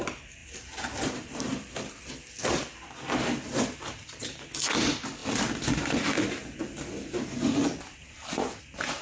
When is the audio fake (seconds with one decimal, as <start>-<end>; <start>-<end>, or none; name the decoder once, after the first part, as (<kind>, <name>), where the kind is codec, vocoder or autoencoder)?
0.4-4.4 (vocoder, BigVGAN v2)